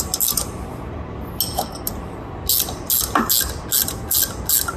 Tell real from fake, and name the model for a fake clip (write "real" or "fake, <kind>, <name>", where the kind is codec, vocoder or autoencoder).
real